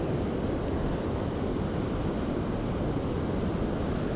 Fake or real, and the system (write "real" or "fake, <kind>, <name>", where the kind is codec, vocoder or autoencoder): real